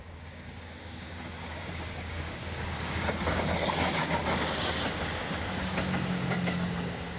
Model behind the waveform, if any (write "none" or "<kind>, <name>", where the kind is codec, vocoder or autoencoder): codec, DAC